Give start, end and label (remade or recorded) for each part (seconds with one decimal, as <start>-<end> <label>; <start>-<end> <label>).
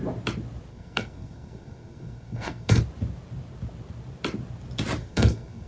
0.0-0.7 recorded; 0.7-2.8 remade; 2.8-5.0 recorded; 5.0-5.7 remade